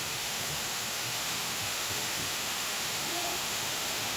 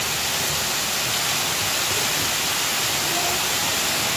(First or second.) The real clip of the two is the second